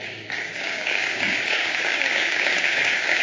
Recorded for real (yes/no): no